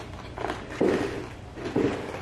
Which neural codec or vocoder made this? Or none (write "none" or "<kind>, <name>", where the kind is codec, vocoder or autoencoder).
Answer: none